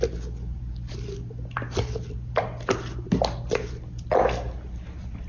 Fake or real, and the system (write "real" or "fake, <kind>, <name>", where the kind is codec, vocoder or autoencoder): real